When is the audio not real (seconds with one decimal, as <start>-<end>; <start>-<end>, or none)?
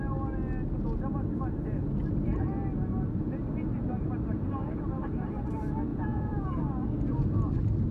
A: 5.9-6.5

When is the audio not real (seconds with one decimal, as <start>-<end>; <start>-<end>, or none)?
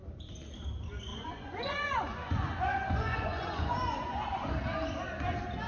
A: 1.1-4.5